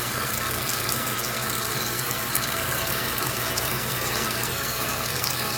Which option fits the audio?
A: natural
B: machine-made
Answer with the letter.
B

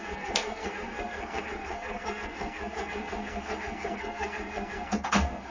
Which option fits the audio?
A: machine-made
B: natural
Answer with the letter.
A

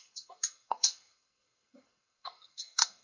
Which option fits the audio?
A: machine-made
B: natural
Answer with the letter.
A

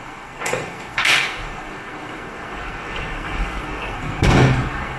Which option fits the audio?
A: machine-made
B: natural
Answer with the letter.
A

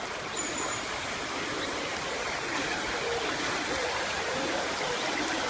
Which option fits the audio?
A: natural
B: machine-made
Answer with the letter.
A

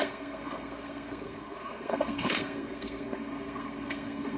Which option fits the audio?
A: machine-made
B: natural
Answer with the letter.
A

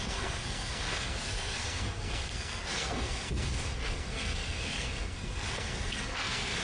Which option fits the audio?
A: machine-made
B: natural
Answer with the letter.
A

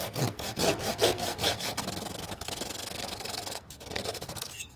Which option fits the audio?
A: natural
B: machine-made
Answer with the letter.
B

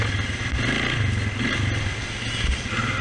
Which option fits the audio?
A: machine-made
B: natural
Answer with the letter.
B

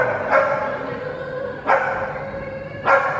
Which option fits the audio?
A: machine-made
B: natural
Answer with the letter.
B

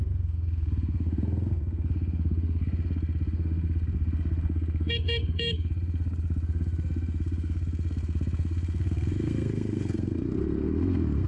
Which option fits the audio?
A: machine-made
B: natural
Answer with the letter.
A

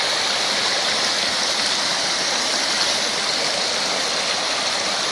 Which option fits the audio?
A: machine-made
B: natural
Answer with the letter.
B